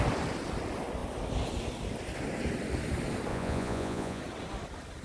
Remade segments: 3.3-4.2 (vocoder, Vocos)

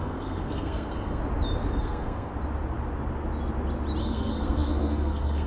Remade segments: 0.0-1.2 (codec, SNAC); 1.8-2.3; 4.0-5.5

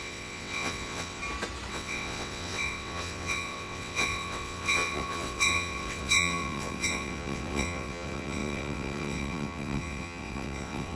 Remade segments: 0.0-1.2 (vocoder, WaveNeXt); 1.7-11.0

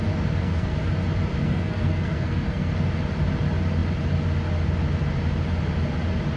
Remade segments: 0.4-0.9 (codec, SNAC); 1.4-2.7

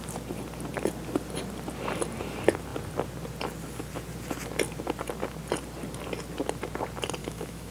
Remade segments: 7.2-7.7 (autoencoder, DAC-VAE)

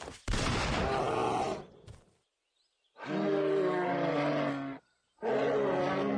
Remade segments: none

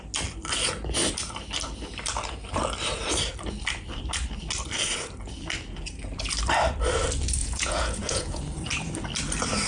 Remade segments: 7.4-8.4 (vocoder, Vocos)

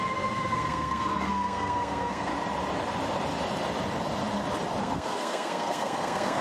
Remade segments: 0.0-2.3 (codec, SNAC); 4.8-6.4